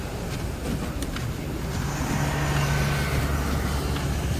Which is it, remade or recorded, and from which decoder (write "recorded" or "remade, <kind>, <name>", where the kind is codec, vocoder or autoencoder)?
recorded